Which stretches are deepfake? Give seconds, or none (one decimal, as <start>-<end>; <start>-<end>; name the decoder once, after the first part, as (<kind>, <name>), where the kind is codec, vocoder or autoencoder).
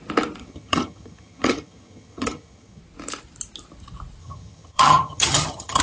0.4-2.8 (vocoder, HiFi-GAN); 4.2-5.8